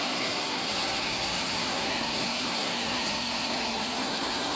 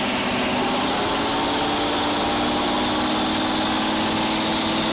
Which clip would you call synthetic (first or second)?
first